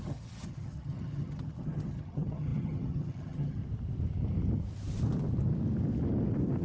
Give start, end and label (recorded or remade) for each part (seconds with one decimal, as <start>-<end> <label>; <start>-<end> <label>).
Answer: 0.0-3.6 remade; 3.6-6.6 recorded